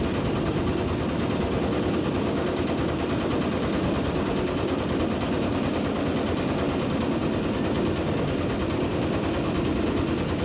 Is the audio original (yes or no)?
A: yes